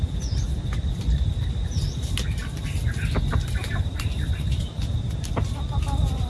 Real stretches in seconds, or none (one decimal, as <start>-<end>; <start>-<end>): 0.0-6.3